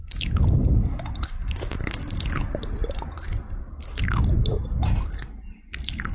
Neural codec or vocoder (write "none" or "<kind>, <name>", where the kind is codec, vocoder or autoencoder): none